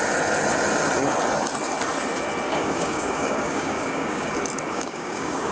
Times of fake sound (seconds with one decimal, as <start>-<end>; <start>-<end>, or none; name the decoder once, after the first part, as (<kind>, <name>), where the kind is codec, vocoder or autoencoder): 2.5-4.3 (codec, DAC); 4.7-5.5